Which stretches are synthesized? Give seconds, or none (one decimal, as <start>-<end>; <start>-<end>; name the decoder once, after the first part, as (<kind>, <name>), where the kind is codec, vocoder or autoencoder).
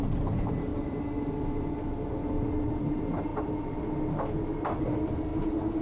0.0-0.7 (vocoder, BigVGAN v2); 2.6-3.3; 4.8-5.8